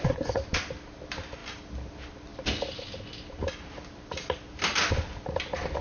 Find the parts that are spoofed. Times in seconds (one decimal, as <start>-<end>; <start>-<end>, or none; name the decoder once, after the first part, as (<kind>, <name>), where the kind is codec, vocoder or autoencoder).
1.4-1.9 (vocoder, BigVGAN v2)